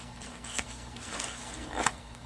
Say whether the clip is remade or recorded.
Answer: remade